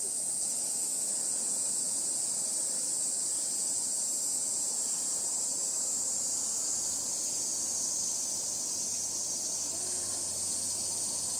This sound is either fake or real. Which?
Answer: real